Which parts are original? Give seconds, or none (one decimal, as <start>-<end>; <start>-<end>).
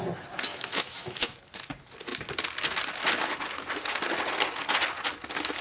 0.0-0.5; 1.4-5.6